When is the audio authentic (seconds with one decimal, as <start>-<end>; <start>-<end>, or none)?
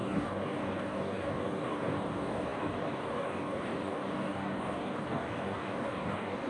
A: none